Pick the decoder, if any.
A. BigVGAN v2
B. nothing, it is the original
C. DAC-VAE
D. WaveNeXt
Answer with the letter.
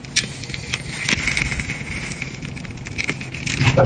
B